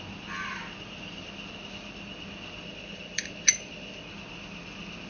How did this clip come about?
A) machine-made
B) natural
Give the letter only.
B